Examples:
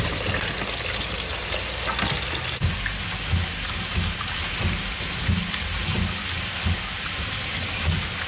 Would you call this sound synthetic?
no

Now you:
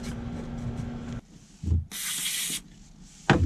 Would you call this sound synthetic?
no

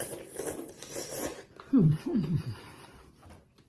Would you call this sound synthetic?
no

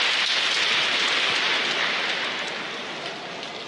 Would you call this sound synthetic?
no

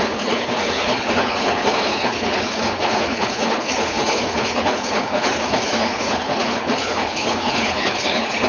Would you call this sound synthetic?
yes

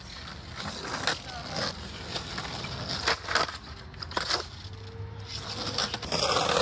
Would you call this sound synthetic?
no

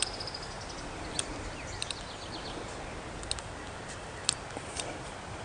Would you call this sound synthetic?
no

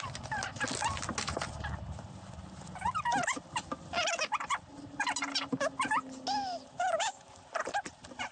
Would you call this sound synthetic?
no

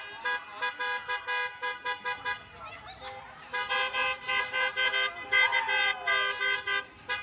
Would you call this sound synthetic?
no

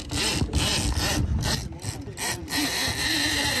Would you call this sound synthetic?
no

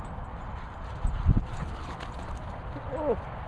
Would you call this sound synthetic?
no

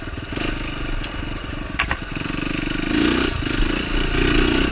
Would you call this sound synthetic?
no